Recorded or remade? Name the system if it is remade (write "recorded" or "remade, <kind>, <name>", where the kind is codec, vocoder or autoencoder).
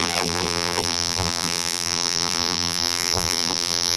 remade, vocoder, BigVGAN v2